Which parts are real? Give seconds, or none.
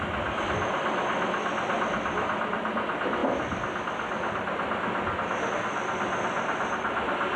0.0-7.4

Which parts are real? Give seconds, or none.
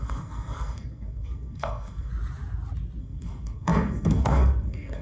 2.1-3.0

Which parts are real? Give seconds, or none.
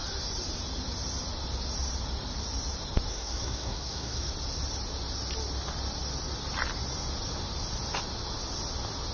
0.0-3.1; 4.3-9.1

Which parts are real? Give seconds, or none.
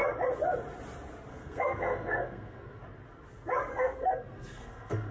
0.0-1.3; 2.8-3.7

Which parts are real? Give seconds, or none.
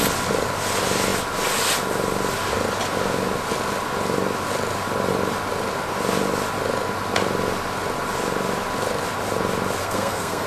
0.0-9.8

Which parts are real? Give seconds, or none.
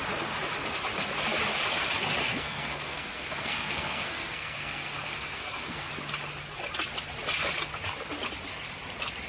0.0-2.2; 5.9-9.3